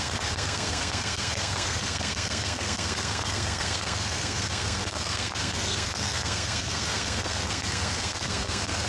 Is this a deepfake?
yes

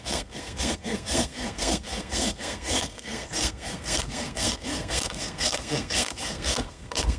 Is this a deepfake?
yes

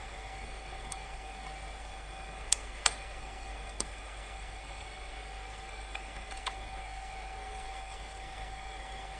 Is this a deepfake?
yes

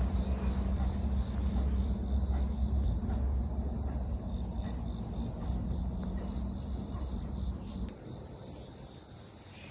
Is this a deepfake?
no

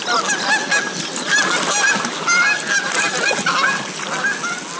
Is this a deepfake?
no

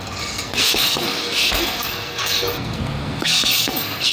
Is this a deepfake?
yes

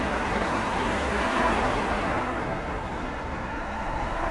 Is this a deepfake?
yes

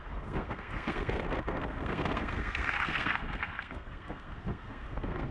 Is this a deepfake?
yes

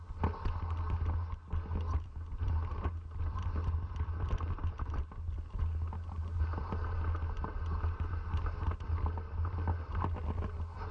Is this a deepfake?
no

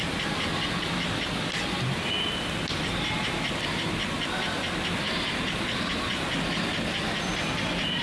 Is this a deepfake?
no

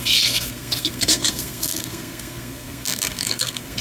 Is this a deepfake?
yes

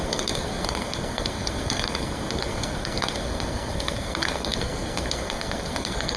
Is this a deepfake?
yes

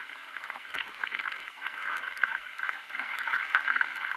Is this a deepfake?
yes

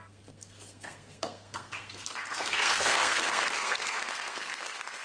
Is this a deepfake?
yes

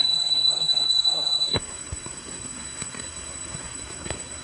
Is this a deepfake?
yes